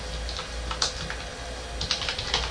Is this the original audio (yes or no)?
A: yes